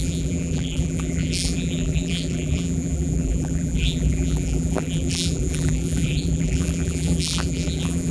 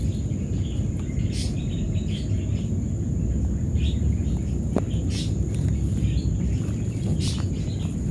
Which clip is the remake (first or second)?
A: first